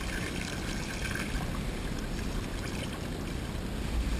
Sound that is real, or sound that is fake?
real